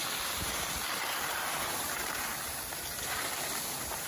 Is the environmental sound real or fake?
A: real